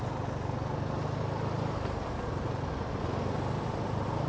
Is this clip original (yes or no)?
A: yes